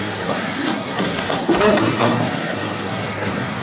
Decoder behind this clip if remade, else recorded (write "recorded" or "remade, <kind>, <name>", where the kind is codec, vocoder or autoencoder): remade, codec, SNAC